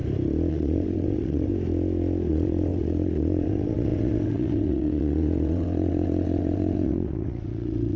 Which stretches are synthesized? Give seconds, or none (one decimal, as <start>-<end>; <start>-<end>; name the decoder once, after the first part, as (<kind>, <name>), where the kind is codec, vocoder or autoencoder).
0.5-1.5 (vocoder, WaveNeXt); 2.3-8.0